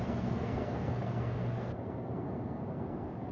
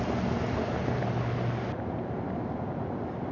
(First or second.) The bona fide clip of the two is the second